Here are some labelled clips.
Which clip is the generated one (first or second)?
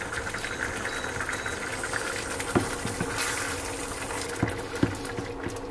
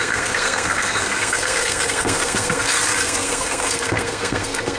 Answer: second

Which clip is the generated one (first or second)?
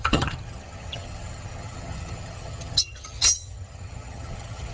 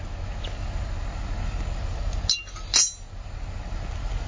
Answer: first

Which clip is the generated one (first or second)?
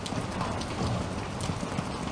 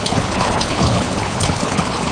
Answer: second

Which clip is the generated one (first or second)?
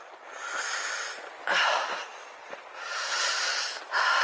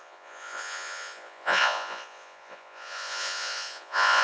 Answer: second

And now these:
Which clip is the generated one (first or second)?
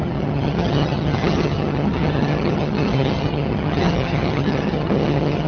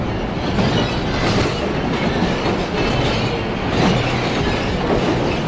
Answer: first